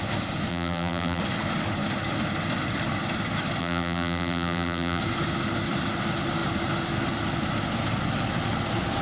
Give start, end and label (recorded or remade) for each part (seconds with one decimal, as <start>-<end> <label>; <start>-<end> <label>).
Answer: 0.0-0.5 recorded; 0.5-1.2 remade; 1.2-3.6 recorded; 3.6-5.0 remade; 5.0-9.0 recorded